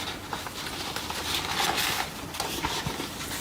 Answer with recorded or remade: recorded